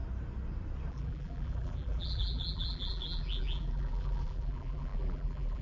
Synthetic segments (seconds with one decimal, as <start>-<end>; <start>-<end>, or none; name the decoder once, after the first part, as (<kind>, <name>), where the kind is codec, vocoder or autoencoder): 0.9-5.6 (vocoder, BigVGAN v2)